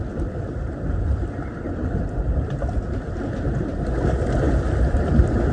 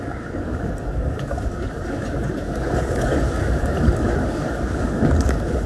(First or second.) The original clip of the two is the first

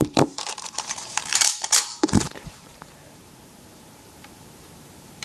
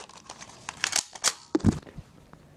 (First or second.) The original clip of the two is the second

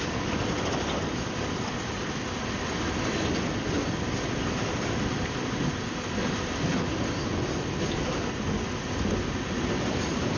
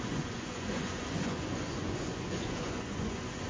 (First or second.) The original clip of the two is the first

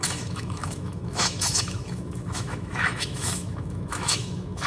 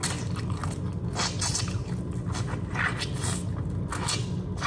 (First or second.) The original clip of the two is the second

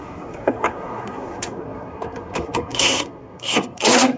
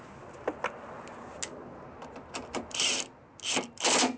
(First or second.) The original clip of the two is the second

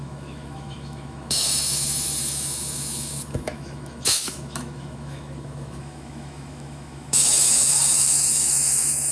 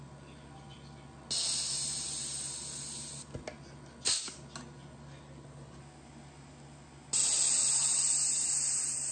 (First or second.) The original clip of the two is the second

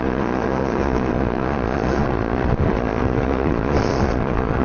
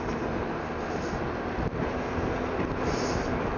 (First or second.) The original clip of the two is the second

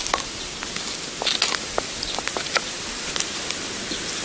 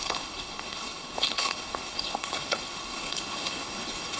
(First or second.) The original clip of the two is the first